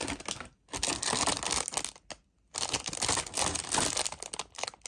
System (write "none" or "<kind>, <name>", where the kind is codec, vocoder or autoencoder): none